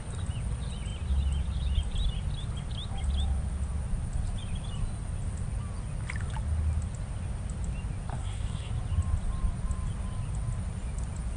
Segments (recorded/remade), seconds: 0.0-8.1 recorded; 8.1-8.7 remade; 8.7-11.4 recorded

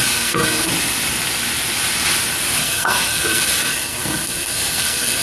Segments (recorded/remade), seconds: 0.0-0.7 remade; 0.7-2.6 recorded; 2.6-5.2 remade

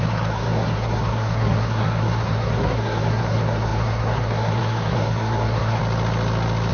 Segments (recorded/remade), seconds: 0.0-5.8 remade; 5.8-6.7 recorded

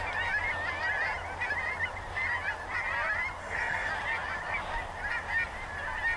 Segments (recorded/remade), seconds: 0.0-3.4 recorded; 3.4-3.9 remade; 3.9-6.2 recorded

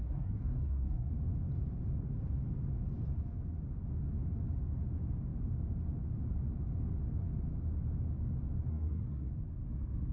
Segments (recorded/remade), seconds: 0.0-1.1 remade; 1.1-8.7 recorded; 8.7-9.3 remade; 9.3-10.1 recorded

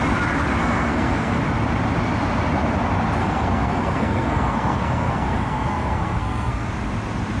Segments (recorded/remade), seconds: 0.0-0.6 recorded; 0.6-1.4 remade; 1.4-3.2 recorded; 3.2-6.7 remade; 6.7-7.4 recorded